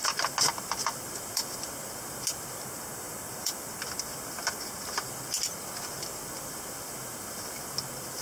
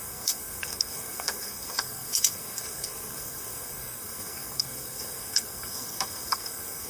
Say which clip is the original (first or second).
first